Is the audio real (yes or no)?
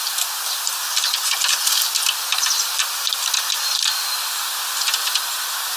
yes